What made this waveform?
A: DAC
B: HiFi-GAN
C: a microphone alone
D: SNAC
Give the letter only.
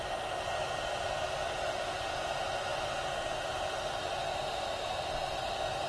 C